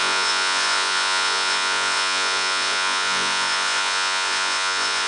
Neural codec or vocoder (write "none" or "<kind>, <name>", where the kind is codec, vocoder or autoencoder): vocoder, Vocos